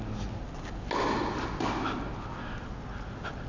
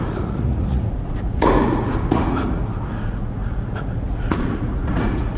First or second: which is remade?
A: second